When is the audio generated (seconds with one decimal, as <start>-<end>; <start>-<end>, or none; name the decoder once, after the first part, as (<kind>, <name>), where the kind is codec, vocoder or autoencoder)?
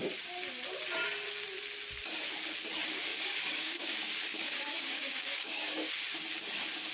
3.1-5.9 (codec, DAC)